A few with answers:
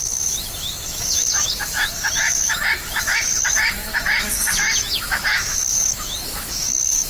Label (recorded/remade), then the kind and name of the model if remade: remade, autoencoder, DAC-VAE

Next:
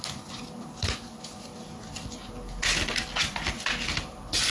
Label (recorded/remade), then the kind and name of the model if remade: recorded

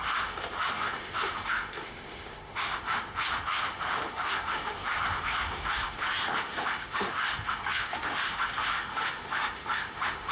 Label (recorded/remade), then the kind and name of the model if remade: remade, autoencoder, DAC-VAE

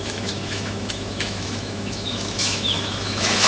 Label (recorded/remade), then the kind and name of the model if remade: remade, autoencoder, DAC-VAE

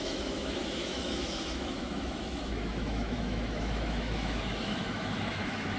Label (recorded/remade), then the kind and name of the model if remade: remade, autoencoder, DAC-VAE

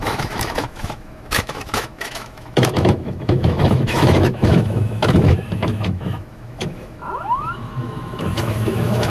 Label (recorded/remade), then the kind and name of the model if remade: remade, autoencoder, DAC-VAE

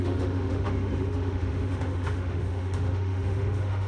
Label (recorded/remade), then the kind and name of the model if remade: remade, autoencoder, DAC-VAE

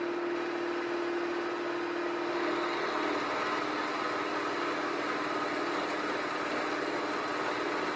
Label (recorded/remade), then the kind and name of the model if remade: recorded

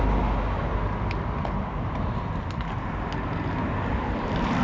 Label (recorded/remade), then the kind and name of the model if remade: recorded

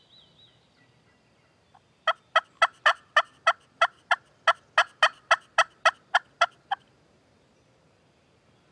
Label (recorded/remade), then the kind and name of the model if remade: recorded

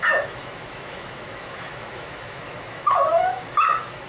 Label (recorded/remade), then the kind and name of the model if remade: remade, autoencoder, DAC-VAE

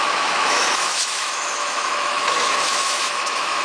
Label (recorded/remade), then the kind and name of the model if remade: remade, autoencoder, DAC-VAE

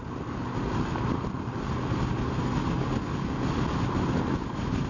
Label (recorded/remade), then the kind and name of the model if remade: recorded